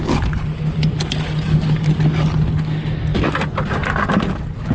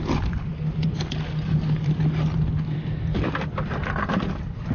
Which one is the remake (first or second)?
second